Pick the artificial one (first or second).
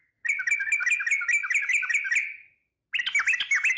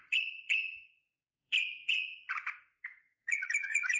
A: second